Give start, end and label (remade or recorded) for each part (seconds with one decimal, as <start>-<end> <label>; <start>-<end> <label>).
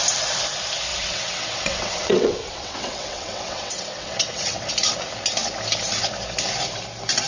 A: 0.0-0.9 recorded; 0.9-4.7 remade; 4.7-7.3 recorded